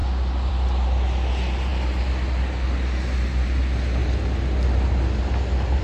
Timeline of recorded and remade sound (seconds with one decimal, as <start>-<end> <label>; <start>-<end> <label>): 0.0-5.8 recorded

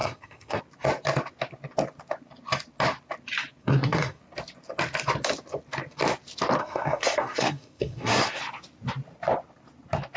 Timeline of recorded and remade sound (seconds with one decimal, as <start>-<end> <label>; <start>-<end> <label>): 0.0-0.6 remade; 0.6-3.6 recorded; 3.6-4.2 remade; 4.2-6.6 recorded; 6.6-8.4 remade; 8.4-10.2 recorded

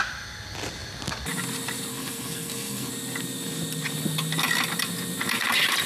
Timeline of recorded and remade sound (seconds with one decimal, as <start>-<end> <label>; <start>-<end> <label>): 0.0-1.9 recorded; 1.9-2.9 remade; 2.9-5.9 recorded

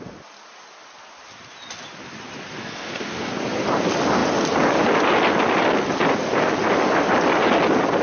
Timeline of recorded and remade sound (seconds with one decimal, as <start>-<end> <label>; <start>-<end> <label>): 0.0-2.6 recorded; 2.6-3.3 remade; 3.3-8.0 recorded

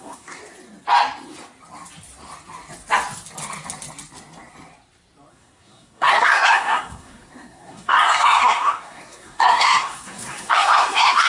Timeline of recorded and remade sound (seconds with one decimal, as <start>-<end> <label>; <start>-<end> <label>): 0.0-0.4 remade; 0.4-5.3 recorded; 5.3-11.3 remade

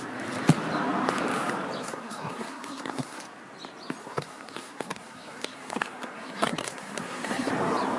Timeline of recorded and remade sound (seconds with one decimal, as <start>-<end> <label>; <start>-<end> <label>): 0.0-1.8 recorded; 1.8-3.2 remade; 3.2-4.0 recorded; 4.0-7.5 remade; 7.5-8.0 recorded

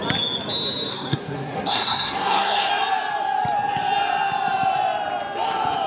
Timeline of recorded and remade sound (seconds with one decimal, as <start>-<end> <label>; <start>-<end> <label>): 0.0-0.9 recorded; 0.9-2.7 remade; 2.7-5.9 recorded